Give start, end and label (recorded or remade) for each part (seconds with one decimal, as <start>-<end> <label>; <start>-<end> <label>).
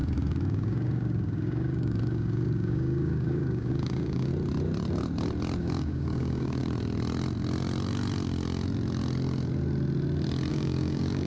0.0-4.3 remade; 4.3-5.6 recorded; 5.6-6.6 remade; 6.6-10.5 recorded; 10.5-11.3 remade